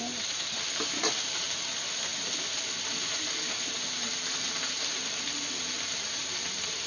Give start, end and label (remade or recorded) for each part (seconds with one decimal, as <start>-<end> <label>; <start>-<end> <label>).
0.0-6.9 remade